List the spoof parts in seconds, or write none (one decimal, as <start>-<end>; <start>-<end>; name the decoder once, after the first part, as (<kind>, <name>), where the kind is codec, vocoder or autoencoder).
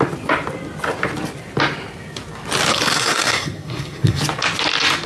2.7-4.2 (codec, SNAC)